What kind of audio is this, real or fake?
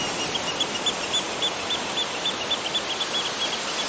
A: real